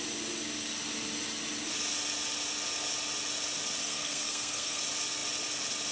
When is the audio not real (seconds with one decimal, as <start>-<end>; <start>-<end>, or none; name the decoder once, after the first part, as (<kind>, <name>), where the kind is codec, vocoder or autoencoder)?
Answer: 3.8-4.8 (codec, SNAC)